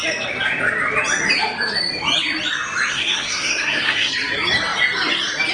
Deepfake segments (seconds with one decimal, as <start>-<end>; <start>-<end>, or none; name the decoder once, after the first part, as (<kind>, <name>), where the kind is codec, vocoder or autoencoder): 2.9-4.1 (codec, SNAC)